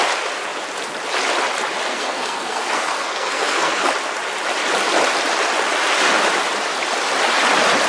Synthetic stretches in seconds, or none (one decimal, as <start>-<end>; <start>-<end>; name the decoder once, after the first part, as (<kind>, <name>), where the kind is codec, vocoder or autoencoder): 1.9-3.9 (codec, SNAC)

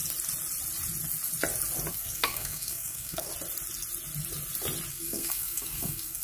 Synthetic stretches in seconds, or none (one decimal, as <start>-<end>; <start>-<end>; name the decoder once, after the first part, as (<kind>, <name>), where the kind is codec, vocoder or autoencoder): 1.9-3.3 (codec, SNAC); 4.9-6.2

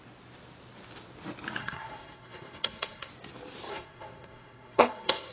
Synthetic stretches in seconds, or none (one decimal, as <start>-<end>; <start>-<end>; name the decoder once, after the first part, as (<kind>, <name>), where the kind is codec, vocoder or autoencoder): 1.6-3.1 (codec, SNAC); 3.7-5.3

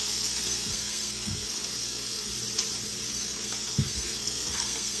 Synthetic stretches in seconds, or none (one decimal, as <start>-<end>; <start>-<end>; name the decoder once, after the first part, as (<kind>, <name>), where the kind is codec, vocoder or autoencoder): 0.0-2.3 (codec, SNAC); 3.1-5.0

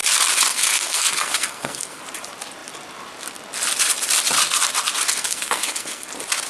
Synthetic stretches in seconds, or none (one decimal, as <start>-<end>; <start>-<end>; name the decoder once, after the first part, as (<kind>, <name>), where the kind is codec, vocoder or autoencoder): 0.5-2.0 (codec, SNAC); 5.1-6.1